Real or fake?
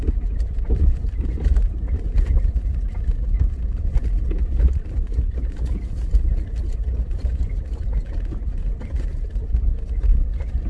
fake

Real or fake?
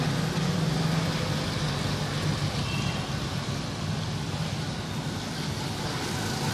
real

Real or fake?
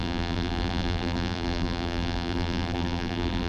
fake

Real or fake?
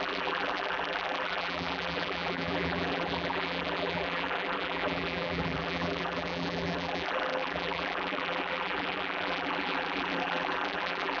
fake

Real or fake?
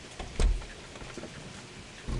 real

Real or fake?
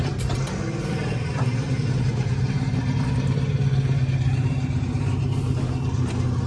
fake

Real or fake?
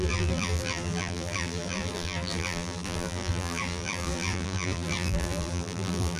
fake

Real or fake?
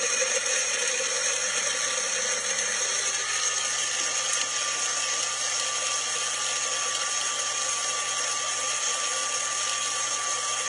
real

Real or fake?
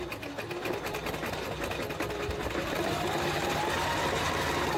real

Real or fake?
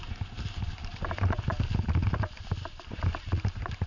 real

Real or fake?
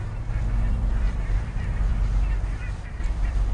fake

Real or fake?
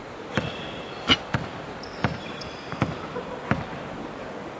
real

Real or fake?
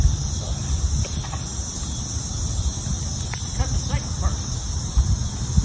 real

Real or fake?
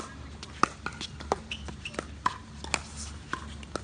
real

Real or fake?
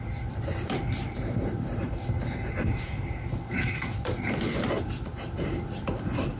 fake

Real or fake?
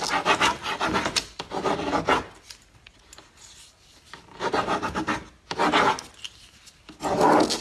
real